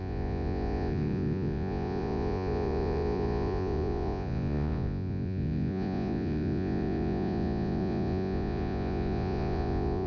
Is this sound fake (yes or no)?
yes